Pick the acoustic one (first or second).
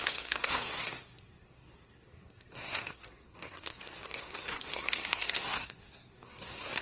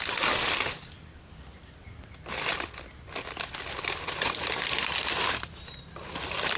second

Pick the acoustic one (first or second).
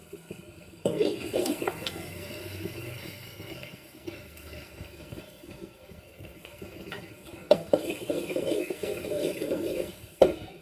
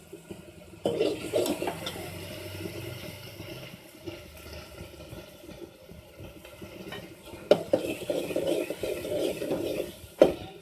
second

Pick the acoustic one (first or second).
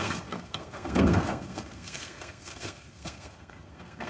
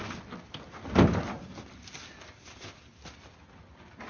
second